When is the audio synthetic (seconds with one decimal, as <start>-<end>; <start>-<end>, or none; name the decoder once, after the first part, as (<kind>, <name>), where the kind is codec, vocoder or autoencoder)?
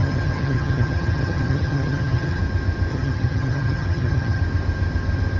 0.0-2.4 (vocoder, HiFi-GAN); 2.9-4.4